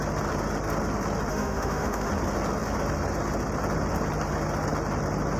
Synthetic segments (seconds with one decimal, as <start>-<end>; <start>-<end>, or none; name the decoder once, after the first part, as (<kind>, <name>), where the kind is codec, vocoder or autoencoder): 1.3-2.1 (autoencoder, DAC-VAE)